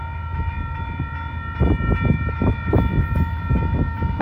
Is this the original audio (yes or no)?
yes